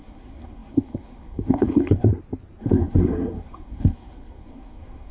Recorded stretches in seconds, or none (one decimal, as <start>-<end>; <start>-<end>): 2.1-2.6